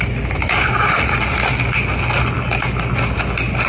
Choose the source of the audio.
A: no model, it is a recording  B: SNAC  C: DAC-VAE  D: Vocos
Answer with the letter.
A